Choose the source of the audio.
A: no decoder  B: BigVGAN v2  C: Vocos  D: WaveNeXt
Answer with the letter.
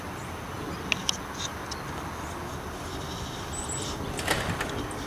A